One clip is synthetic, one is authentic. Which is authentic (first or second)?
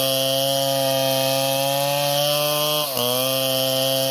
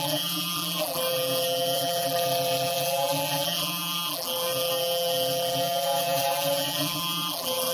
first